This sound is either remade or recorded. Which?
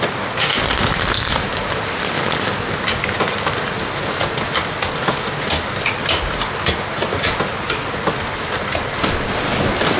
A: recorded